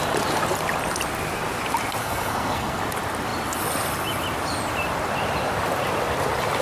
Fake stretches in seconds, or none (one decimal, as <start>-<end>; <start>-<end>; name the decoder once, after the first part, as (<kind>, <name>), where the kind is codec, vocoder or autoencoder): 2.0-2.8 (codec, SNAC)